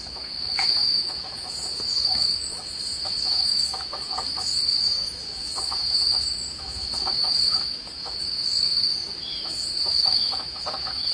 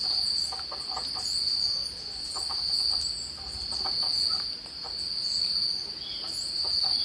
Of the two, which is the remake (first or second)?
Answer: first